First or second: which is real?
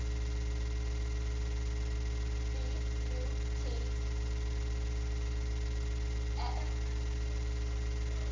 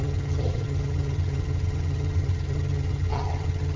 first